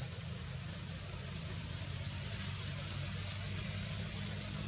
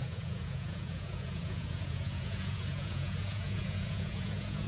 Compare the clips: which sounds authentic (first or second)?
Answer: first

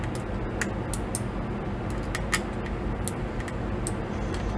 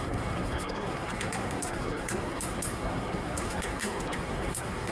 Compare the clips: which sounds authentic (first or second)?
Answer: first